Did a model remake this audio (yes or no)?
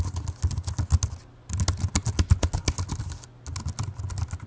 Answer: no